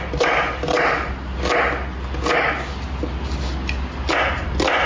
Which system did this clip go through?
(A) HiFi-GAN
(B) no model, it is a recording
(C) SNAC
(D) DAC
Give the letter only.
B